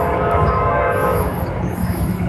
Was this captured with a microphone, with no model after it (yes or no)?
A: no